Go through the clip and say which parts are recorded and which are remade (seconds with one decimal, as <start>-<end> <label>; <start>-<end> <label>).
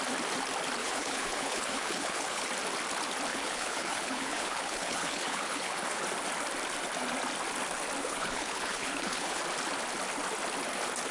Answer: 0.0-0.8 recorded; 0.8-2.5 remade; 2.5-3.3 recorded; 3.3-6.0 remade; 6.0-8.0 recorded; 8.0-9.4 remade; 9.4-11.1 recorded